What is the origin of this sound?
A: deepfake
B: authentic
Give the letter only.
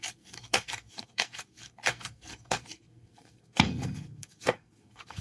A